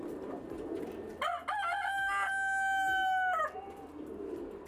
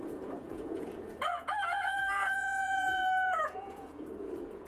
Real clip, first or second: first